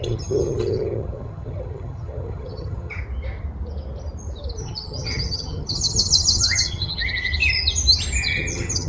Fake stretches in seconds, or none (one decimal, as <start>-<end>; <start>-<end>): 0.0-3.0; 4.6-7.0; 8.2-8.9